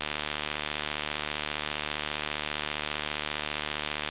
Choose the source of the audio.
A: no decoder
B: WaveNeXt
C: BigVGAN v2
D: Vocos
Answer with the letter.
A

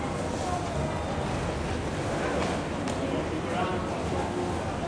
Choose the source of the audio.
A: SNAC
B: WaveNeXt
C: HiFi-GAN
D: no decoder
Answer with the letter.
D